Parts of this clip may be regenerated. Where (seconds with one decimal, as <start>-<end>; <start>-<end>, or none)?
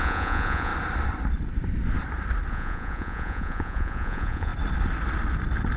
0.0-0.7; 2.5-4.5